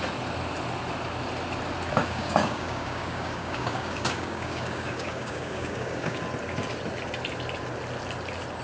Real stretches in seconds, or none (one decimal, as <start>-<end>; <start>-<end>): 0.0-2.0; 6.2-8.6